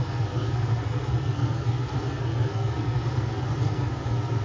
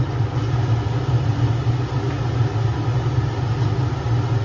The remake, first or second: first